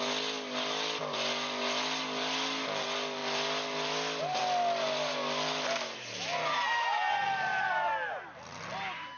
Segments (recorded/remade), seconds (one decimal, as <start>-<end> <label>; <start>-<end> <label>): 0.0-9.2 recorded